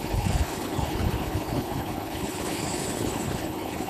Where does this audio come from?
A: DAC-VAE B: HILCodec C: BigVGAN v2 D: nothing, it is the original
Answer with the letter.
B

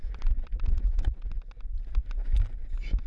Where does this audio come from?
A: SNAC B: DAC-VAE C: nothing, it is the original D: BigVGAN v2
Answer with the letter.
C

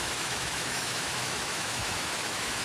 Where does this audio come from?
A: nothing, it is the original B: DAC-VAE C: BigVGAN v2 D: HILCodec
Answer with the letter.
B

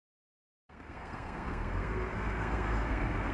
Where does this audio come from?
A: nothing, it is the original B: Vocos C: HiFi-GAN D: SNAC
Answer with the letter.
D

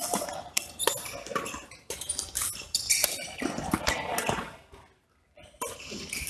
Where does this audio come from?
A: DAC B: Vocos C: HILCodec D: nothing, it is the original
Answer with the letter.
D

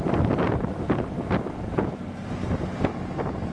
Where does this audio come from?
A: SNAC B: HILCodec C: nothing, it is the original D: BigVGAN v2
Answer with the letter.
C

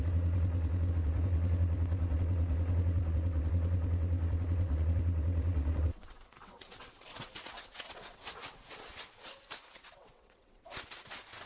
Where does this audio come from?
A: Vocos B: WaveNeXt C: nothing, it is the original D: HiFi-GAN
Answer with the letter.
B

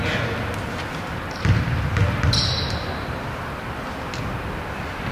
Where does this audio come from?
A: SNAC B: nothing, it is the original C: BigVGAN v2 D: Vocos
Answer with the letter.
B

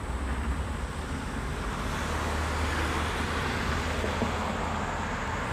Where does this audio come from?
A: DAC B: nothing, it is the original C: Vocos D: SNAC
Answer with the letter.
B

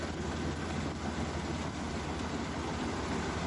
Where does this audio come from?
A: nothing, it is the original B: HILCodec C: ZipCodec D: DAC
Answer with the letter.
A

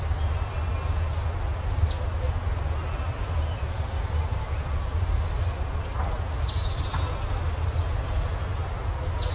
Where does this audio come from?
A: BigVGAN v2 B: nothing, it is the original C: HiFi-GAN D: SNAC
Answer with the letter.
B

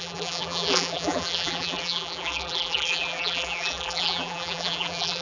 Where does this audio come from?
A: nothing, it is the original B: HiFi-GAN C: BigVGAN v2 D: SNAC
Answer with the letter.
C